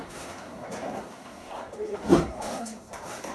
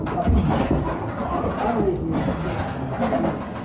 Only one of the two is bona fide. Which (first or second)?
second